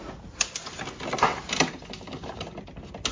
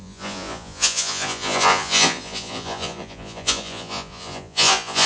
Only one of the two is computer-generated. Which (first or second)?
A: second